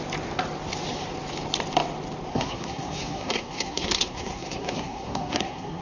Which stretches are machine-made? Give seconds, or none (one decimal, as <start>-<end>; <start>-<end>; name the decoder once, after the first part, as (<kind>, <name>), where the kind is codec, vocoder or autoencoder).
2.3-5.8 (codec, SNAC)

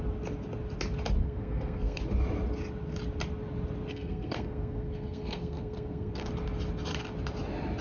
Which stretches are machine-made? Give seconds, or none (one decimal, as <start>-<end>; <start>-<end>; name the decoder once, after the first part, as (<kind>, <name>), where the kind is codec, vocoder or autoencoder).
1.2-2.0 (codec, SNAC); 3.9-6.3

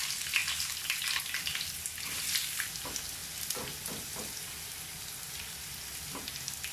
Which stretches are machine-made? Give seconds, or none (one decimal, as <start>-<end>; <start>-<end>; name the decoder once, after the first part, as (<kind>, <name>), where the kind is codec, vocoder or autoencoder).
none

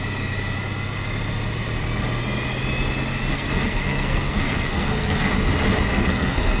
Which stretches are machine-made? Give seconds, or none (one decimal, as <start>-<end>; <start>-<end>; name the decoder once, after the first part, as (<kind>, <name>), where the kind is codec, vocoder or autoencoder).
3.3-5.3 (codec, SNAC); 5.9-6.6

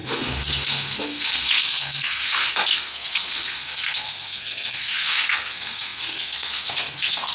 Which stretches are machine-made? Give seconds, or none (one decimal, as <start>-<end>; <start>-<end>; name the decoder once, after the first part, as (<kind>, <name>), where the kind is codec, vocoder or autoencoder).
0.0-7.3 (codec, SNAC)

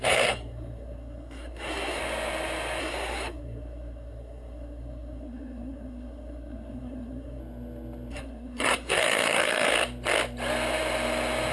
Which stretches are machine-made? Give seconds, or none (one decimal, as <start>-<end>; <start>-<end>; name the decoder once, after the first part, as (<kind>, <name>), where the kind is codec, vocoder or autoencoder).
0.0-2.0 (codec, SNAC); 2.8-7.4; 8.1-9.7

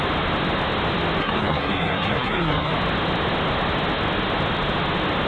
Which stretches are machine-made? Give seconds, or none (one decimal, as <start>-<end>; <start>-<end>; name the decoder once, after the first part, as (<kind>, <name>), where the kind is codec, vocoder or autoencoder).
1.2-2.7 (codec, SNAC)

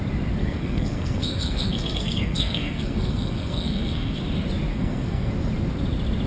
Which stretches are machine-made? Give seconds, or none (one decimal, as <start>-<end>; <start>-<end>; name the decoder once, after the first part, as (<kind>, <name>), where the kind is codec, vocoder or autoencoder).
0.4-4.2 (codec, SNAC); 4.7-5.3